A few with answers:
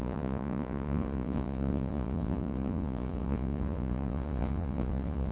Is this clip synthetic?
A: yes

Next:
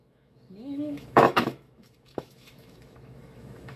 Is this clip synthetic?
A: yes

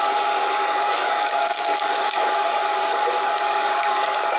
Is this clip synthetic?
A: yes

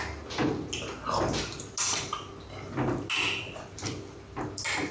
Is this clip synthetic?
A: no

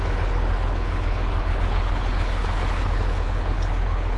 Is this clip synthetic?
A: yes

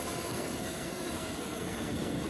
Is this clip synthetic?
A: yes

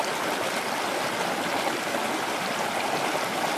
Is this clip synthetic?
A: no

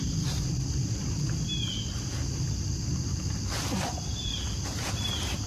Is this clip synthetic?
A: no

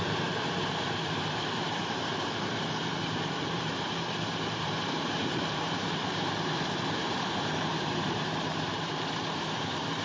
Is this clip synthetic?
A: yes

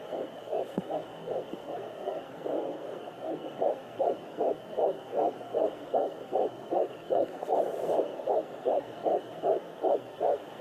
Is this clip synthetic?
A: yes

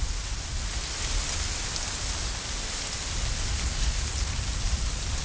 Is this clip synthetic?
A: no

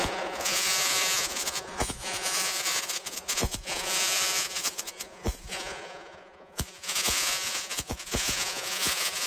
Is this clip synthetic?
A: yes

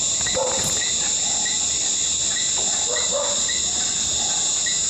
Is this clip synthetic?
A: no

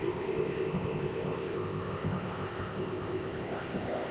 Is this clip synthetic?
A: yes